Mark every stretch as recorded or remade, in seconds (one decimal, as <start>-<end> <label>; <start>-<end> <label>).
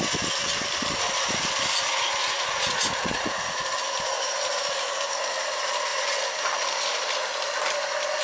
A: 0.0-2.2 recorded; 2.2-3.6 remade; 3.6-8.2 recorded